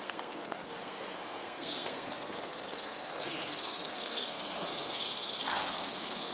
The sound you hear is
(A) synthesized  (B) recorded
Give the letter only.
A